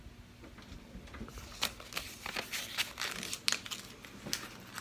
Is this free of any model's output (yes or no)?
yes